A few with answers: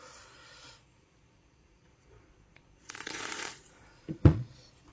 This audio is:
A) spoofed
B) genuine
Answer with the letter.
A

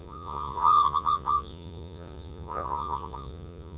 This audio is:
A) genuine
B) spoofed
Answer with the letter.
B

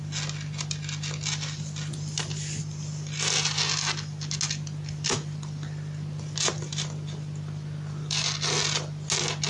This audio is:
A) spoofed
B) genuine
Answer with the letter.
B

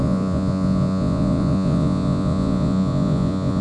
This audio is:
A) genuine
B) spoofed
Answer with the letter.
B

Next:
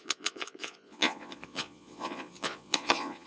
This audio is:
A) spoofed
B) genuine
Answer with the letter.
A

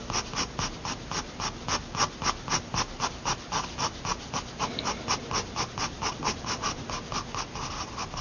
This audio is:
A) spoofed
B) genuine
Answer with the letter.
B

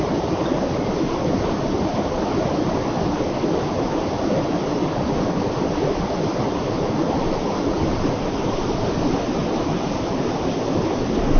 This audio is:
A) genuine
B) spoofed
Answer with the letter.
A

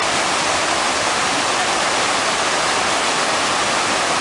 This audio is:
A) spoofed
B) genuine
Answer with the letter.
B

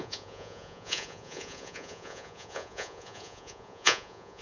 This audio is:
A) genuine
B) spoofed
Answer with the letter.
B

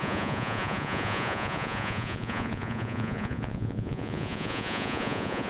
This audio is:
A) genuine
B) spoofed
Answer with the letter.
B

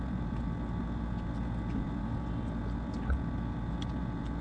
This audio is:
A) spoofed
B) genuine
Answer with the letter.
B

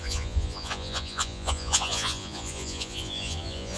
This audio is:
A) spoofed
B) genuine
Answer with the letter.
A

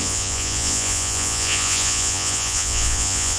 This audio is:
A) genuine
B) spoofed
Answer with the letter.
B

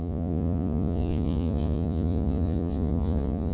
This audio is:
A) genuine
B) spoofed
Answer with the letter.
B